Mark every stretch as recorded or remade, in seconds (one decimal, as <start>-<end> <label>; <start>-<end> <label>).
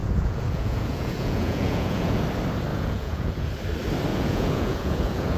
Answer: 0.0-2.2 remade; 2.2-2.7 recorded; 2.7-3.5 remade; 3.5-4.1 recorded; 4.1-5.4 remade